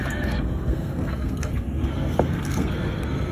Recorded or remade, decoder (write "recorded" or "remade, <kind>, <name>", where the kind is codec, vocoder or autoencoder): remade, codec, SNAC